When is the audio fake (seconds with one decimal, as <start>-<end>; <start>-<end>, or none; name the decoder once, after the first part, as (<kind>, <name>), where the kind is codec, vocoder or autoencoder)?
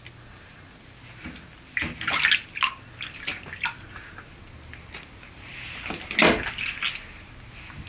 none